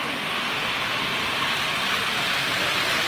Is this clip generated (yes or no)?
no